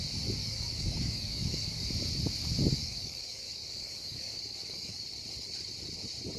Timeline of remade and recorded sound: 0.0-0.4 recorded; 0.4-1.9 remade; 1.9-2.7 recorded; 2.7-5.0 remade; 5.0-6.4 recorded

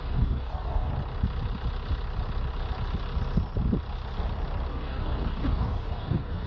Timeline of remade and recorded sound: 0.0-0.9 remade; 0.9-4.7 recorded; 4.7-6.5 remade